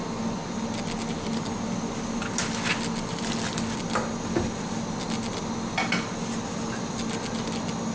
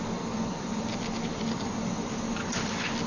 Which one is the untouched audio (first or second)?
first